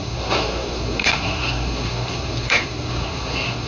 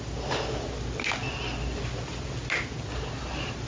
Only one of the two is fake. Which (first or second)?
first